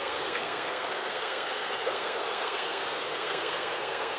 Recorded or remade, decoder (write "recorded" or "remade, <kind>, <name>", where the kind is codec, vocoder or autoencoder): remade, codec, SNAC